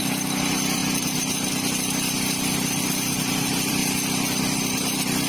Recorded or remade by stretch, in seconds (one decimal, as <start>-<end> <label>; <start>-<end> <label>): 0.0-0.8 remade; 0.8-3.3 recorded; 3.3-3.8 remade; 3.8-4.4 recorded; 4.4-5.3 remade